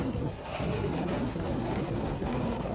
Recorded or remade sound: remade